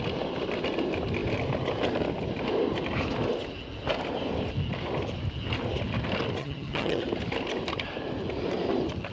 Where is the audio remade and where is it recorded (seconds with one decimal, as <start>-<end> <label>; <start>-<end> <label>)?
0.0-6.4 recorded; 6.4-7.0 remade; 7.0-9.1 recorded